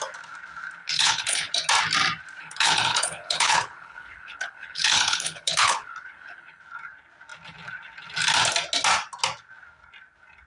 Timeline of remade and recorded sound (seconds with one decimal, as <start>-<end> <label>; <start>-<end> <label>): 0.0-0.8 recorded; 0.8-1.5 remade; 1.5-2.4 recorded; 2.4-6.6 remade; 6.6-10.5 recorded